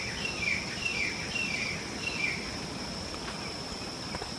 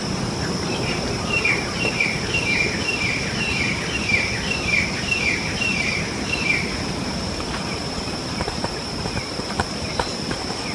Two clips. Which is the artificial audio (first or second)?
second